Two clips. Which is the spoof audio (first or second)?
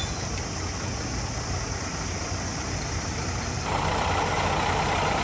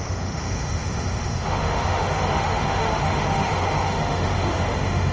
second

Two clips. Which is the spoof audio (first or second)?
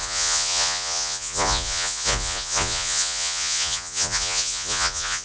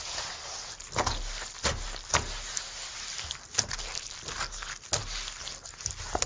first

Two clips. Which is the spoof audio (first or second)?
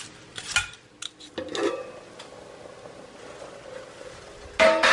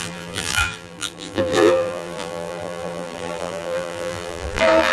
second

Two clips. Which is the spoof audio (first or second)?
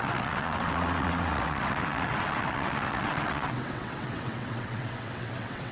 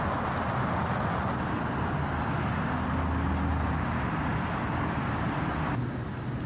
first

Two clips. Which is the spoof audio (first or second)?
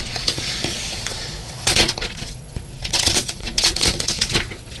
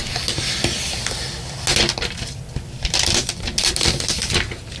first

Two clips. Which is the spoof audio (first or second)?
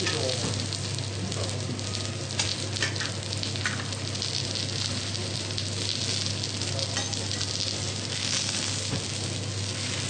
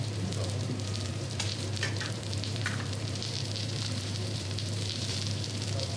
second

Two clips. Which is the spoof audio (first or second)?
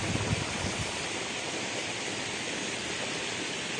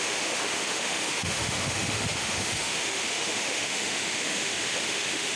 second